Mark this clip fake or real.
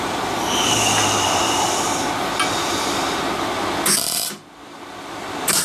real